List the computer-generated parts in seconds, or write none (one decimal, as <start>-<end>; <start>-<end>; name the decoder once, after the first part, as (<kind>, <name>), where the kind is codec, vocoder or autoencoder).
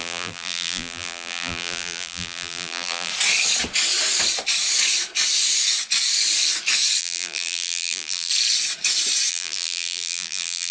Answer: 0.0-3.1 (vocoder, BigVGAN v2); 7.0-8.3; 9.3-10.7